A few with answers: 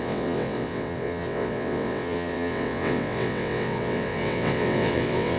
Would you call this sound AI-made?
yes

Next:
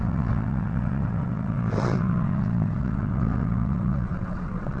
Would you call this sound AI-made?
yes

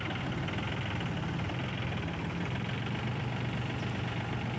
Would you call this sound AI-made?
no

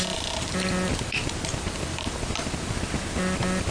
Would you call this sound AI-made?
no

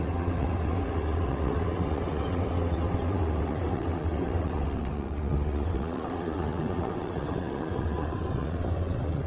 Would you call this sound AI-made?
yes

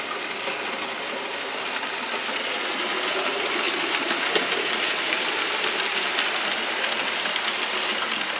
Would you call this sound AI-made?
no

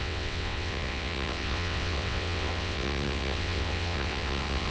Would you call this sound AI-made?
yes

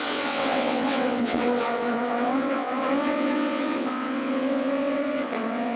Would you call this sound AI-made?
yes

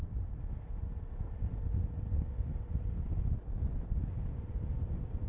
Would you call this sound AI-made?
no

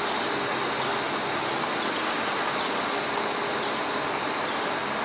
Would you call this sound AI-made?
no